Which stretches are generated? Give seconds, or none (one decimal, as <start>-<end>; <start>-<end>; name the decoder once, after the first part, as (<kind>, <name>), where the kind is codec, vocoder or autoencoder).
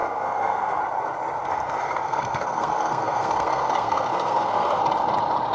0.0-0.8 (codec, SNAC); 1.5-4.8